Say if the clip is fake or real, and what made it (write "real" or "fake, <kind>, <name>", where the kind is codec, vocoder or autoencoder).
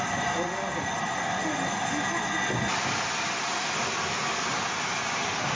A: real